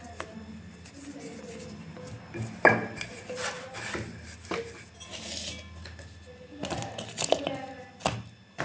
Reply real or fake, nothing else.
real